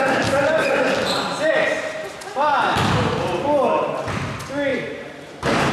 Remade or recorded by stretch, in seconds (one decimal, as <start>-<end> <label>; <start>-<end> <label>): 0.0-4.7 recorded; 4.7-5.7 remade